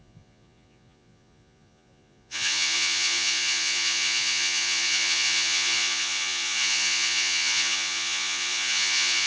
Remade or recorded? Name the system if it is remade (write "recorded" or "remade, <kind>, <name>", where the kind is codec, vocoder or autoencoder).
remade, vocoder, Vocos